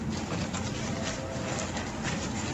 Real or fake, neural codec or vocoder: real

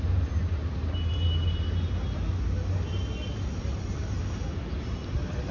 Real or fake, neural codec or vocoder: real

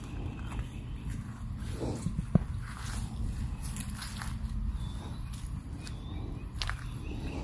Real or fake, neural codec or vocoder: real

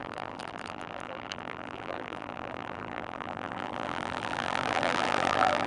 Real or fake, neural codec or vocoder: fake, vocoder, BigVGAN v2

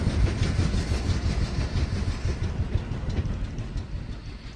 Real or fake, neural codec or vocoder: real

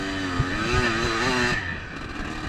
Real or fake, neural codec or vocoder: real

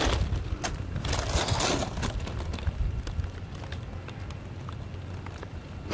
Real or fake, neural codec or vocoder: real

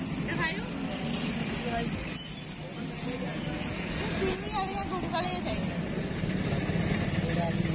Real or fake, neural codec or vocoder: real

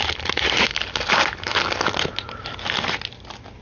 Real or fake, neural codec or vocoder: real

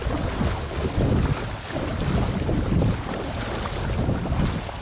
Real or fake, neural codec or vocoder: real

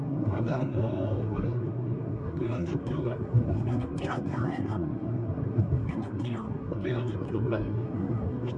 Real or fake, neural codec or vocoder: fake, codec, SNAC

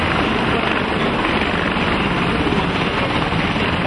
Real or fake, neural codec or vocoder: real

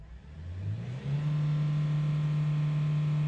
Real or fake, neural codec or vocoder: real